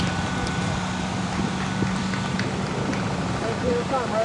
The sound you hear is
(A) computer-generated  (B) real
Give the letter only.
B